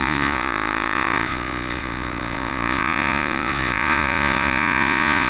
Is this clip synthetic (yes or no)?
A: yes